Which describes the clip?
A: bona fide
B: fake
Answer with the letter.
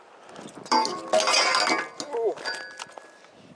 A